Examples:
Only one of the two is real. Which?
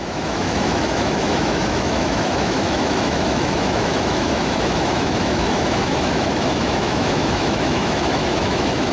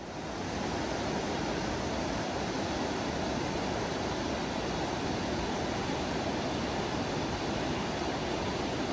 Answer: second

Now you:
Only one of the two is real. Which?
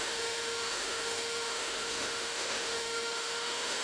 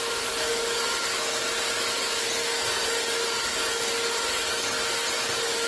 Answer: second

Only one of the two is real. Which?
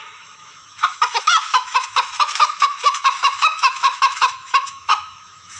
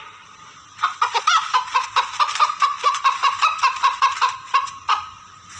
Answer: second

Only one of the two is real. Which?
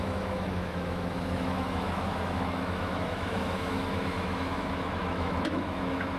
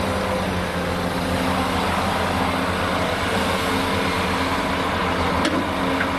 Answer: second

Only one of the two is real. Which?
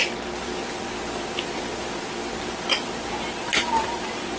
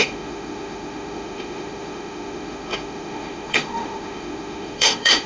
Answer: first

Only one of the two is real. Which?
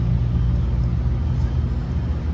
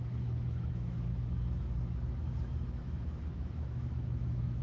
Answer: first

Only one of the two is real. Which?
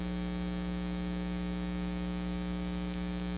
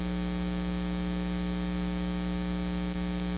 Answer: second